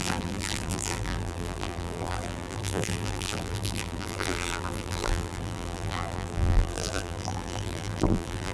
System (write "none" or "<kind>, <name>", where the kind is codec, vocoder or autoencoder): vocoder, BigVGAN v2